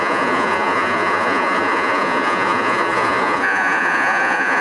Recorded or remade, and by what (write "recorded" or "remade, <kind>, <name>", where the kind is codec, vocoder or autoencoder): remade, vocoder, Vocos